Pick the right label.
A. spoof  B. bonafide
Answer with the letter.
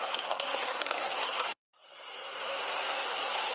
A